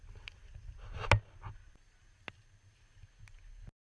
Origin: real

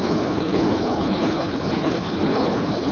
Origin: fake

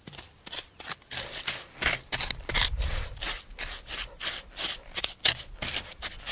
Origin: real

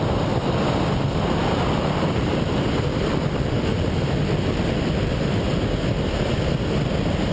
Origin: real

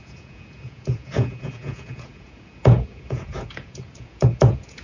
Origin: fake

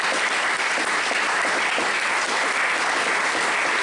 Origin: real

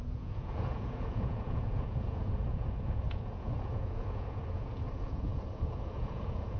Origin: fake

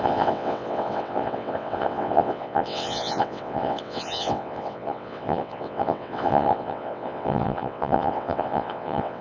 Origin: fake